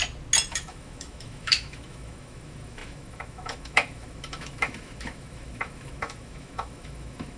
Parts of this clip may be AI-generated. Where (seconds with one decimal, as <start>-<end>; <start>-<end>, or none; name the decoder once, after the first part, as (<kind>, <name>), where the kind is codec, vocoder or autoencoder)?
0.5-7.4 (autoencoder, DAC-VAE)